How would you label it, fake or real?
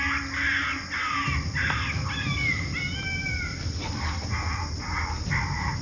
real